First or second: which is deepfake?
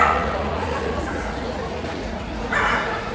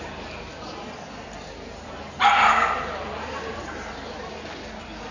first